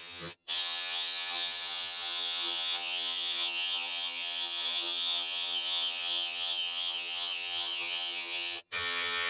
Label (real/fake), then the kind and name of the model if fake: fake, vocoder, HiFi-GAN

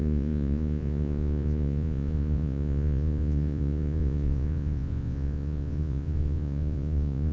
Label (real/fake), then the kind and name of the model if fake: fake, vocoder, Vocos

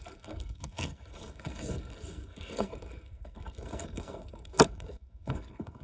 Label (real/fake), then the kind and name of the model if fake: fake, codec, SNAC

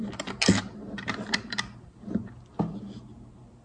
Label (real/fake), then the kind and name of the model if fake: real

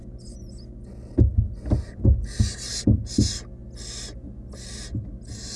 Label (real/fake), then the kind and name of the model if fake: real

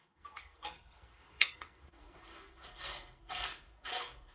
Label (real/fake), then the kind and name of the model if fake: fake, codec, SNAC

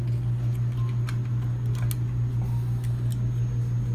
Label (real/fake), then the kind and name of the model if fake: real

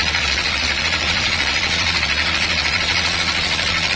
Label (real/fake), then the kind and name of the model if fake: fake, vocoder, Vocos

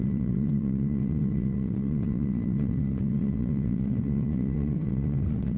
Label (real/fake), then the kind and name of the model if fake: fake, vocoder, WaveNeXt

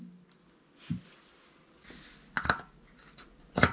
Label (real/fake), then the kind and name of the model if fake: real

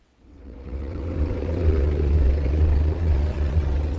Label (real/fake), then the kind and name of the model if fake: fake, vocoder, WaveNeXt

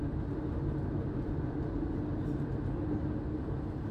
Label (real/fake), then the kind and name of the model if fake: real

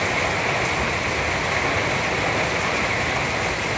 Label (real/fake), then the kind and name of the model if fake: real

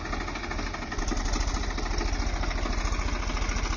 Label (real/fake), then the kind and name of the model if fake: real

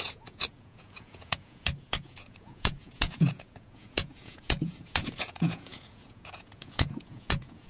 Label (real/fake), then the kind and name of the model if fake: fake, vocoder, Vocos